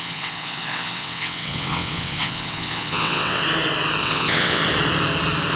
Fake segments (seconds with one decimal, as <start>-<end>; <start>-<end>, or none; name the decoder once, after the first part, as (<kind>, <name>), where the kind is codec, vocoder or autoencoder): 0.0-3.4 (vocoder, WaveNeXt); 4.0-4.6